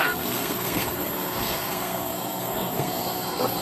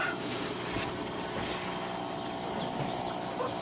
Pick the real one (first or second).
second